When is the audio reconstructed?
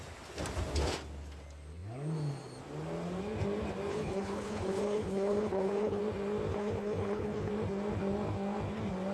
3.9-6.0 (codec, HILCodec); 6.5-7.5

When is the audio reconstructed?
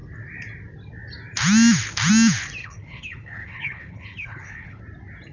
2.6-4.8 (codec, HILCodec)